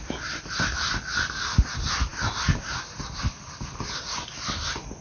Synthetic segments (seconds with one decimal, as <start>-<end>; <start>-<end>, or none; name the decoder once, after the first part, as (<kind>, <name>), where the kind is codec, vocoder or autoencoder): none